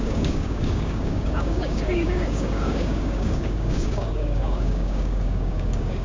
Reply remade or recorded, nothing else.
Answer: remade